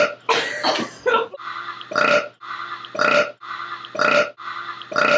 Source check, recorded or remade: recorded